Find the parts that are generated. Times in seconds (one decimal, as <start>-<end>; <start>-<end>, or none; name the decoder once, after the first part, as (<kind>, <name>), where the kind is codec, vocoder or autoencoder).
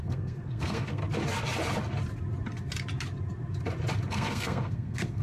0.0-1.0 (codec, SNAC); 4.1-5.2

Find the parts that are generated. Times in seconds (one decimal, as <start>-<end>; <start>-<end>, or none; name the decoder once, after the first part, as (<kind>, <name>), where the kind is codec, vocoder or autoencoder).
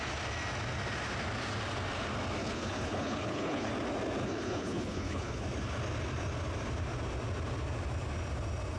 2.4-3.7 (codec, HILCodec); 4.2-5.4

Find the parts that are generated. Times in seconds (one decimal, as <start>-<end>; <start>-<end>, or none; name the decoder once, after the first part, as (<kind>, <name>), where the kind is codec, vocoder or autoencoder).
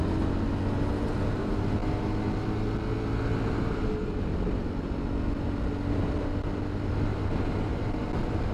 7.1-8.1 (vocoder, BigVGAN v2)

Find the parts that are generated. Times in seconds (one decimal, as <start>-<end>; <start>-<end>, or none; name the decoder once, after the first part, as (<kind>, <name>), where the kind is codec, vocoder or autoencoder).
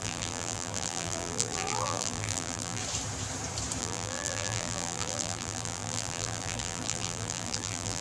0.0-2.8 (vocoder, BigVGAN v2); 3.8-8.0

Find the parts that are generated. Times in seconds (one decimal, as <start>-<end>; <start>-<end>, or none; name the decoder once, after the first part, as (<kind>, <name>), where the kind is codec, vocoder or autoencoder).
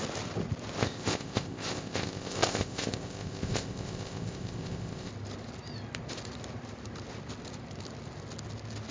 0.8-5.1 (codec, ZipCodec)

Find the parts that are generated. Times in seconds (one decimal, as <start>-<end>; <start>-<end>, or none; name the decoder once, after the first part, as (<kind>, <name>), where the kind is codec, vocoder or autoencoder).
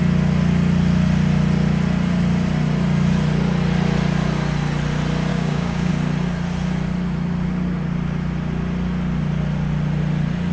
5.3-5.9 (codec, DAC)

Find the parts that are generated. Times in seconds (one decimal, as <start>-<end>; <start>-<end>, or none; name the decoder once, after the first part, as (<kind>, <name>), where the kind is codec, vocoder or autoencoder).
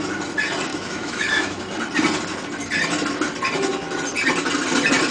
0.7-1.6 (autoencoder, DAC-VAE)